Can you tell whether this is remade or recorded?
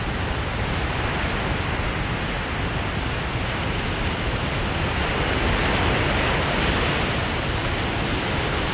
recorded